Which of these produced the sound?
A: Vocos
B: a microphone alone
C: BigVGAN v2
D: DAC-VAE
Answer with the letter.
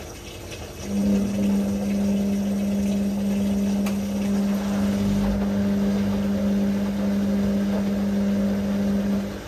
B